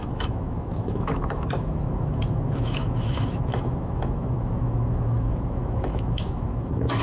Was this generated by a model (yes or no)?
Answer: yes